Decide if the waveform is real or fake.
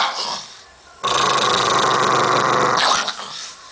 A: real